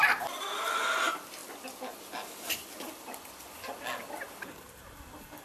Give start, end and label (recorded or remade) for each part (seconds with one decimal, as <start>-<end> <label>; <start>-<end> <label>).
0.0-5.4 recorded